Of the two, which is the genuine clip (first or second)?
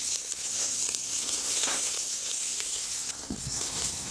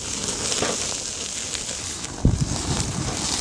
second